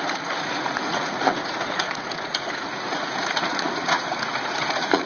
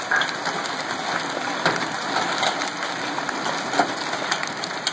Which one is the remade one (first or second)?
first